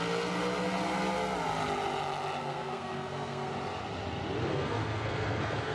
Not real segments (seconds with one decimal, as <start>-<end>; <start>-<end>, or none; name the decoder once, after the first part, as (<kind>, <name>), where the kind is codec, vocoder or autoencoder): 2.4-3.5 (codec, SNAC); 4.5-5.7